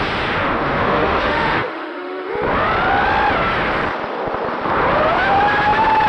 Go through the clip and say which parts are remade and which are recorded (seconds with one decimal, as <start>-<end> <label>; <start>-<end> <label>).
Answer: 0.0-0.4 recorded; 0.4-2.3 remade; 2.3-6.1 recorded